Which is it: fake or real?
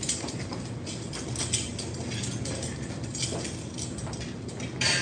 real